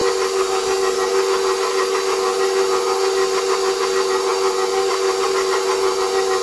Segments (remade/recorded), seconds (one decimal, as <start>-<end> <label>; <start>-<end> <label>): 0.0-6.4 recorded